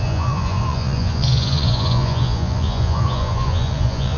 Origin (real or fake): fake